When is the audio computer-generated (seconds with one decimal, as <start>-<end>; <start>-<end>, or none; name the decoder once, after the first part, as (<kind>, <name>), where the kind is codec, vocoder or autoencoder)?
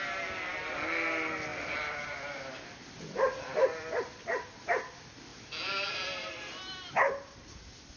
1.5-4.2 (vocoder, BigVGAN v2); 5.3-6.4